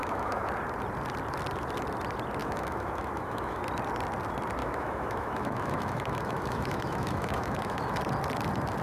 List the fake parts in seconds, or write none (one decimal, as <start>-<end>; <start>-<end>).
0.0-0.5; 2.4-3.6; 4.6-8.0